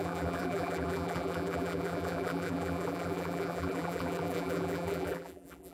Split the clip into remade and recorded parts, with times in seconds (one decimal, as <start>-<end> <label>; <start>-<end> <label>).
0.0-5.7 remade